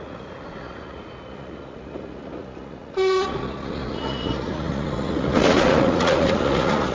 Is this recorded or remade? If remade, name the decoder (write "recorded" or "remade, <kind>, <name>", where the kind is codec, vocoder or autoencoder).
remade, vocoder, Vocos